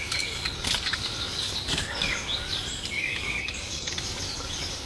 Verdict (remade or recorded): remade